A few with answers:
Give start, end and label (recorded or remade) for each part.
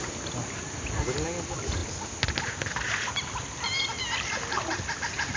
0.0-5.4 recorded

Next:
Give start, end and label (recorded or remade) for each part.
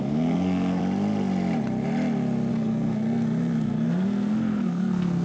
0.0-0.8 remade; 0.8-2.5 recorded; 2.5-5.2 remade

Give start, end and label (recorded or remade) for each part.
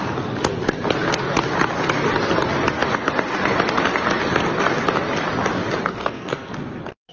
0.0-5.9 recorded; 5.9-6.5 remade; 6.5-7.1 recorded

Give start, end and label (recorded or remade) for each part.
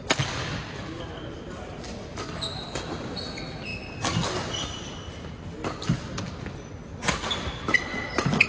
0.0-8.5 recorded